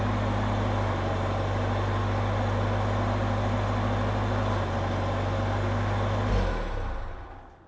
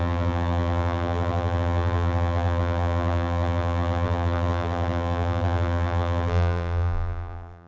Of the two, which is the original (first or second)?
first